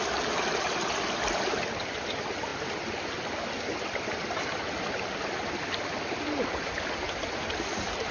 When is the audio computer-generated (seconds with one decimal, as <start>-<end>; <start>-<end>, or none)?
none